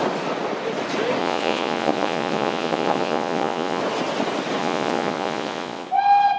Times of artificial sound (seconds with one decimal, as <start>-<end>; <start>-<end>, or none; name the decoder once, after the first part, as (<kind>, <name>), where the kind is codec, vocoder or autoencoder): 1.2-3.8 (vocoder, Vocos); 4.6-5.9